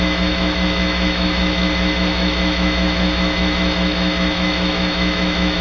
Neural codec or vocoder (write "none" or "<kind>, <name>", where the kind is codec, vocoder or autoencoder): autoencoder, DAC-VAE